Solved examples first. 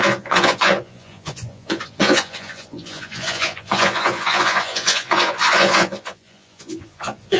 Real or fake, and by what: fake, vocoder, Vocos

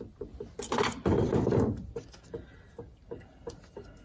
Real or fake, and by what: real